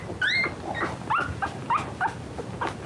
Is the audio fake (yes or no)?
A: no